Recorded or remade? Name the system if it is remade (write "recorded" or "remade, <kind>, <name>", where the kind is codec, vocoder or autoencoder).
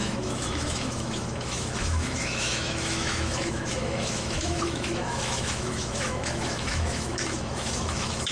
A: remade, autoencoder, DAC-VAE